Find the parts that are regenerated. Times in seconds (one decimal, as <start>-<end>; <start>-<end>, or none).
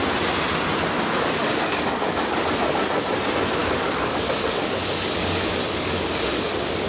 1.4-2.6; 3.6-6.4